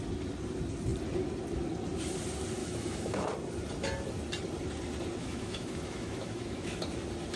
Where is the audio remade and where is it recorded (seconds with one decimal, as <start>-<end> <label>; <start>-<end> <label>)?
0.0-2.6 recorded; 2.6-3.3 remade; 3.3-5.2 recorded; 5.2-6.8 remade; 6.8-7.4 recorded